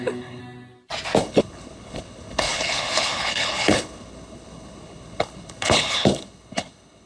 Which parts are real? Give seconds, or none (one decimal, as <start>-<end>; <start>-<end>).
0.4-1.2